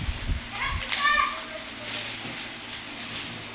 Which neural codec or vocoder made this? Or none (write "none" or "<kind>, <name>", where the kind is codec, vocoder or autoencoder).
none